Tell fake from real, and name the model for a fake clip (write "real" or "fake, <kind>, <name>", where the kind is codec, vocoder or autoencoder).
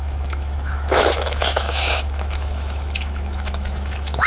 fake, autoencoder, DAC-VAE